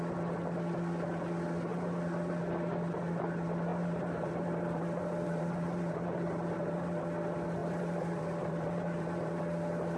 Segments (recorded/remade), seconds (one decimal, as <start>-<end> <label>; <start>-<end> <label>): 0.0-1.7 recorded; 1.7-2.4 remade; 2.4-3.7 recorded; 3.7-7.0 remade; 7.0-7.6 recorded; 7.6-9.4 remade; 9.4-10.0 recorded